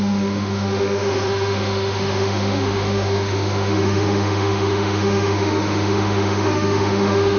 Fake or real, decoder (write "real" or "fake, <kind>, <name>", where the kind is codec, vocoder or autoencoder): fake, autoencoder, DAC-VAE